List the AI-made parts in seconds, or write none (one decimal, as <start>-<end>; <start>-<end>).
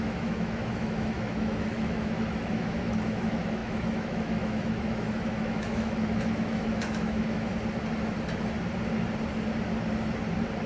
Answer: 0.0-7.5